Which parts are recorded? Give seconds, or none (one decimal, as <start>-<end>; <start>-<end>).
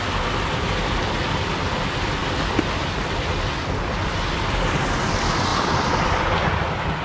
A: 0.0-5.5; 6.2-7.0